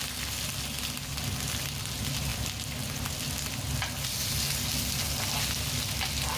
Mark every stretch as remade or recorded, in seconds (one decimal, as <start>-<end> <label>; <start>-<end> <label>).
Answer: 0.0-6.4 recorded